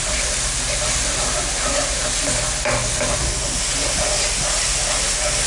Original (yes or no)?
yes